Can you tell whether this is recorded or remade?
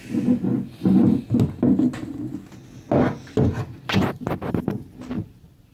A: recorded